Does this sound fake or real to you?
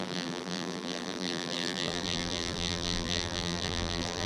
fake